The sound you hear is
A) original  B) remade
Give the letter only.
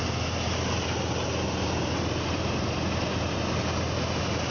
A